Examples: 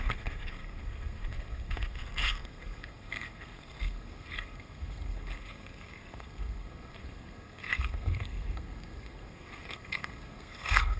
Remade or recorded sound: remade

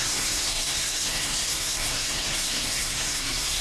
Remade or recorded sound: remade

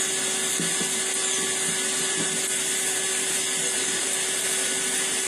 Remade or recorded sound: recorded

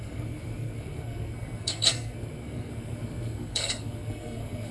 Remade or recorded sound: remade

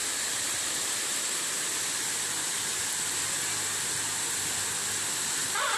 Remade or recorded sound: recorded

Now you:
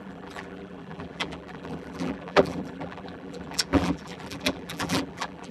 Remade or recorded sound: remade